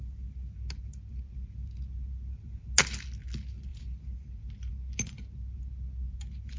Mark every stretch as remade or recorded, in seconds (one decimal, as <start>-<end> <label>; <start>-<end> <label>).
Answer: 0.0-6.6 recorded